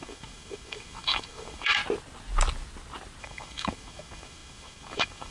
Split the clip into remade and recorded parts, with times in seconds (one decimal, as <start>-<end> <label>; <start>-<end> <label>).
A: 0.0-1.8 remade; 1.8-3.2 recorded; 3.2-5.3 remade